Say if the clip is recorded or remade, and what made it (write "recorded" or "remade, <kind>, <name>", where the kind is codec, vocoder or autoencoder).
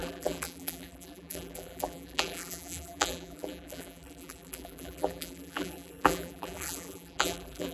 remade, vocoder, BigVGAN v2